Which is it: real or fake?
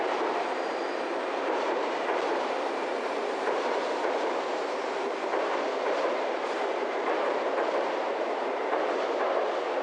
fake